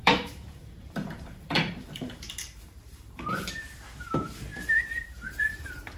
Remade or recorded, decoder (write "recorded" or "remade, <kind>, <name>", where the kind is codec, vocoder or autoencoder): remade, vocoder, BigVGAN v2